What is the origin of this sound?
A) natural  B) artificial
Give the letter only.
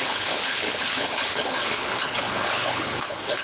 B